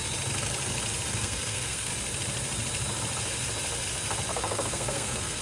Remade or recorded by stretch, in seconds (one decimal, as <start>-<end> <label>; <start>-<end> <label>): 0.0-1.1 recorded; 1.1-1.9 remade; 1.9-4.3 recorded; 4.3-5.4 remade